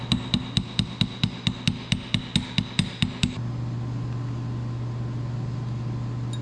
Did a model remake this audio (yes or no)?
no